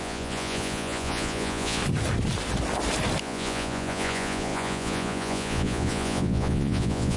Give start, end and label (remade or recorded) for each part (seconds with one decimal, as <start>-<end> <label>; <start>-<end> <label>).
0.0-1.8 remade; 1.8-3.2 recorded; 3.2-7.2 remade